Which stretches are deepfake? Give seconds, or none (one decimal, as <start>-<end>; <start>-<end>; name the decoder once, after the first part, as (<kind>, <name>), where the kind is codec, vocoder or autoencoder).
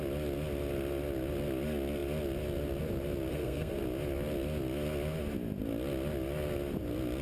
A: 3.3-3.8 (codec, SNAC)